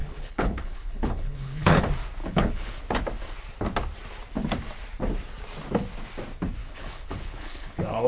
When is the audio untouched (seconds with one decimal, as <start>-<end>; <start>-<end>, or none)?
1.8-2.2; 2.8-6.6